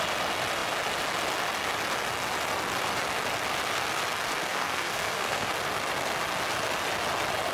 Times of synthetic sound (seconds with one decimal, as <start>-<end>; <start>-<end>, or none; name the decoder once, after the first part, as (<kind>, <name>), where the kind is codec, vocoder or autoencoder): 4.5-5.5 (codec, SNAC)